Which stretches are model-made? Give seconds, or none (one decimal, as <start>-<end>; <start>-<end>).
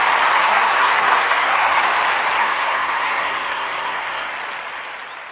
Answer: 0.4-1.8; 2.4-4.3